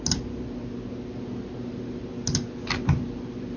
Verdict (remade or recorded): recorded